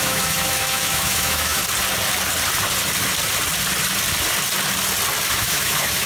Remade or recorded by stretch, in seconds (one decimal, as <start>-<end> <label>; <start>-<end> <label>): 0.0-1.6 remade; 1.6-5.3 recorded; 5.3-6.1 remade